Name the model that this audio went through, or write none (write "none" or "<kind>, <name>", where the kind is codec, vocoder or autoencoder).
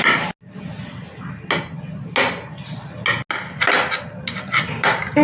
none